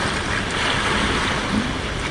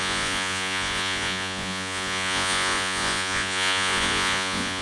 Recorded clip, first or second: first